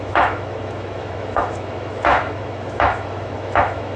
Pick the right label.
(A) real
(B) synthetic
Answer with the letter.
B